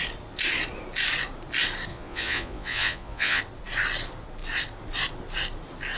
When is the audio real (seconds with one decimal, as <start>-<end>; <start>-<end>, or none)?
0.0-1.9; 3.4-6.0